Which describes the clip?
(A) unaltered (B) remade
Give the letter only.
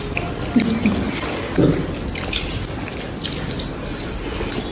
A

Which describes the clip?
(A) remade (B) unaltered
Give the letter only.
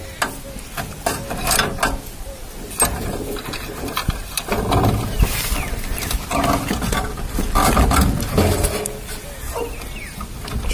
B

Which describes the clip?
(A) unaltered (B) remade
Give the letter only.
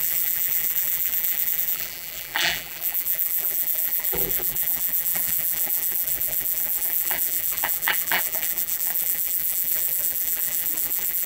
B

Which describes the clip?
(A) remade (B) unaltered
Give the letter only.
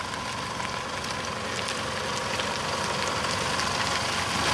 B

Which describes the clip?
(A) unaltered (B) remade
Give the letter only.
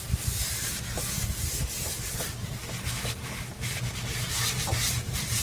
B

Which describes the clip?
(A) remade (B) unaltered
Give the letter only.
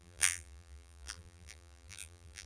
A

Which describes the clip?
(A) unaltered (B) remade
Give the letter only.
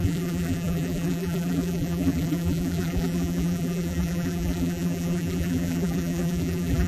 B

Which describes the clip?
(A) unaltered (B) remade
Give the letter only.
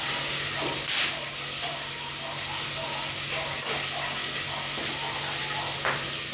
A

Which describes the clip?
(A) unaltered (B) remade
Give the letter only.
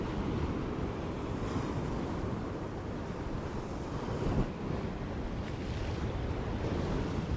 B